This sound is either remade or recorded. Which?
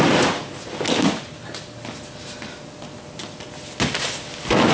recorded